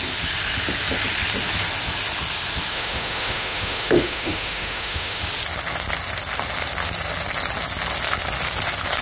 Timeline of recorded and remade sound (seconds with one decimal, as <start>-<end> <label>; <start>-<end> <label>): 0.0-2.7 recorded; 2.7-5.2 remade; 5.2-9.0 recorded

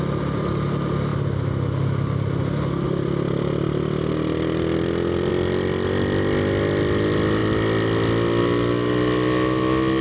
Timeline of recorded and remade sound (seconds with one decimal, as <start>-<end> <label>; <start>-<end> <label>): 0.0-10.0 recorded

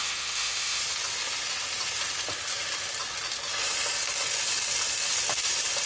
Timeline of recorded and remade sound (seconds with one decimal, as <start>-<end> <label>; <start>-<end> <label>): 0.0-0.8 remade; 0.8-5.9 recorded

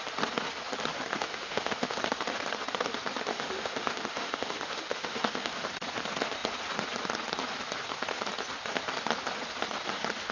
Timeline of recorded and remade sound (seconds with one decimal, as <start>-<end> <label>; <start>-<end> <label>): 0.0-1.1 recorded; 1.1-2.0 remade; 2.0-3.3 recorded; 3.3-5.7 remade; 5.7-10.3 recorded